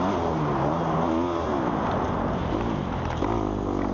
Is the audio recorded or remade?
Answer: recorded